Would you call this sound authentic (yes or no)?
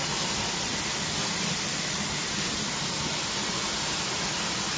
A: yes